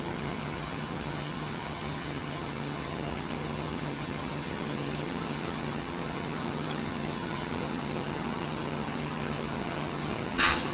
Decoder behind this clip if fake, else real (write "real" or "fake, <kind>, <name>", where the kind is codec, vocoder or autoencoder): fake, vocoder, HiFi-GAN